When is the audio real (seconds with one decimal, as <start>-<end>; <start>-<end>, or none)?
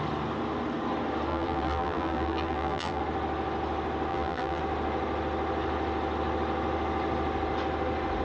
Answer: 0.0-1.3; 3.0-4.1; 4.6-8.2